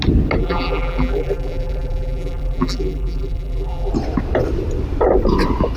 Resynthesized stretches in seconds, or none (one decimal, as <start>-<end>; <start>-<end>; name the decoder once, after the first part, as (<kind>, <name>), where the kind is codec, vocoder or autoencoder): 0.4-3.9 (vocoder, BigVGAN v2)